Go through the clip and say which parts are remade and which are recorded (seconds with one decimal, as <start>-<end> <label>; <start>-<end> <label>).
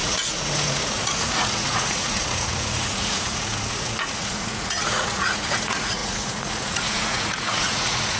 0.0-8.2 remade